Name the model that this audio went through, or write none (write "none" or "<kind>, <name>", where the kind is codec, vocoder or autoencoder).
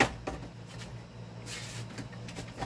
none